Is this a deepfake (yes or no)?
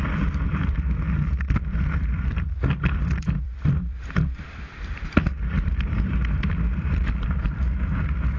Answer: yes